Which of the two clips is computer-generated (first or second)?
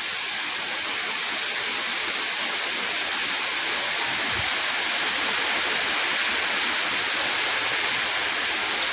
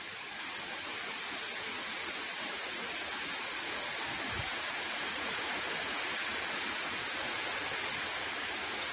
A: second